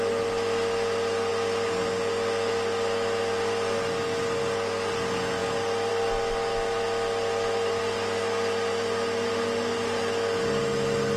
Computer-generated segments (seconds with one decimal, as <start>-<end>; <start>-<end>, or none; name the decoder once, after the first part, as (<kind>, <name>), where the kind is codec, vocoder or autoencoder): none